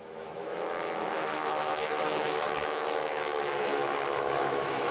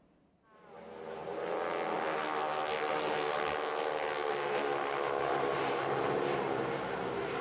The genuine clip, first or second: second